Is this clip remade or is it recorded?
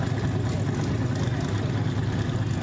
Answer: recorded